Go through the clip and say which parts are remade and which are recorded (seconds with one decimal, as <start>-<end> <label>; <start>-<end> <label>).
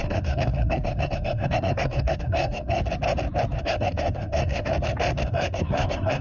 0.0-2.8 remade; 2.8-3.6 recorded; 3.6-4.7 remade; 4.7-5.2 recorded; 5.2-6.2 remade